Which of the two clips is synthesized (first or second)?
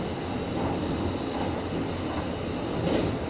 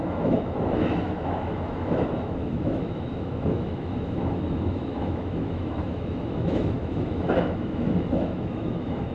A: second